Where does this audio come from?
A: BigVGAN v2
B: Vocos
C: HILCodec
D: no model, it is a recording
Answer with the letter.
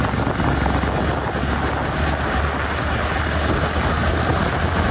D